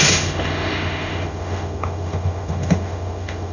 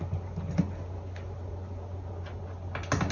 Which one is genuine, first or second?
second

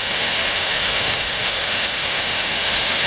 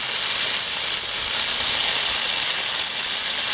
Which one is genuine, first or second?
second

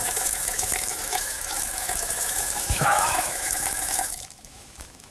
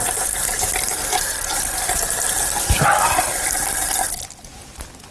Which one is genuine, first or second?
second